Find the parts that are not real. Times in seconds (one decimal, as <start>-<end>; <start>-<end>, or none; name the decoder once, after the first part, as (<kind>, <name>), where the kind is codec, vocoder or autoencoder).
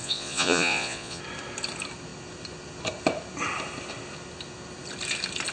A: 0.0-1.2 (vocoder, Vocos)